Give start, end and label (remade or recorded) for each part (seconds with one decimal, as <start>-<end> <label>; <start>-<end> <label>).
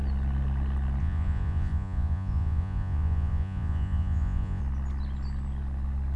0.0-1.0 recorded; 1.0-4.6 remade; 4.6-6.2 recorded